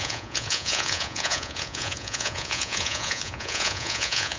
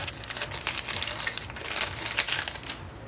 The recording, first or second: second